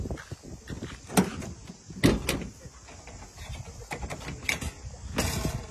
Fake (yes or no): no